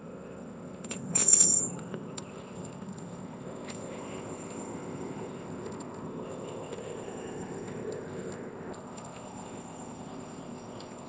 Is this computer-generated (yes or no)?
yes